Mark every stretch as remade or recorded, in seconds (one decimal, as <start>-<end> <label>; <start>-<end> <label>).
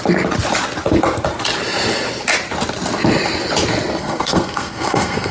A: 0.0-4.0 recorded; 4.0-5.3 remade